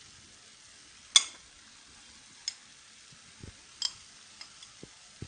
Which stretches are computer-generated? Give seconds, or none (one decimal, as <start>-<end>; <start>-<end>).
none